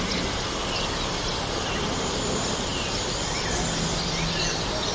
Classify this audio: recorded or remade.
recorded